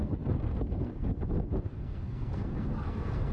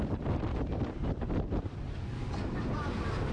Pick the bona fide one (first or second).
second